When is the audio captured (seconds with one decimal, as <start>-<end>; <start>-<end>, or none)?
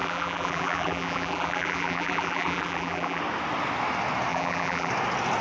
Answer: 3.2-4.3; 4.9-5.4